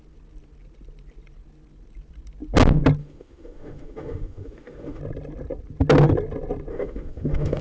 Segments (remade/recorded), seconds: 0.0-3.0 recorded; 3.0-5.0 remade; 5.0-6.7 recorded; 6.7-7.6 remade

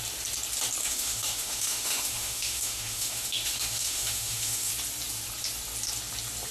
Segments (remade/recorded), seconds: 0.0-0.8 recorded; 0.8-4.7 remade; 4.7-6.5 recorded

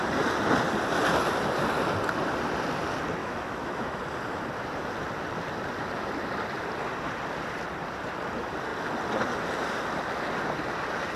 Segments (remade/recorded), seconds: 0.0-3.2 recorded; 3.2-4.0 remade; 4.0-11.2 recorded

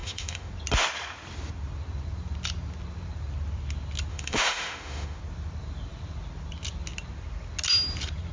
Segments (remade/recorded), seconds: 0.0-0.5 remade; 0.5-4.1 recorded; 4.1-5.2 remade; 5.2-8.3 recorded

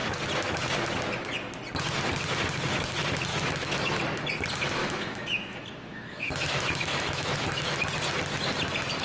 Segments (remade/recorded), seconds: 0.0-3.3 recorded; 3.3-4.0 remade; 4.0-4.8 recorded; 4.8-7.8 remade; 7.8-9.0 recorded